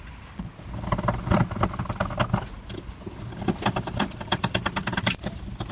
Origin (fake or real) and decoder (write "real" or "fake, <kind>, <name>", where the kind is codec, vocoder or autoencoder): real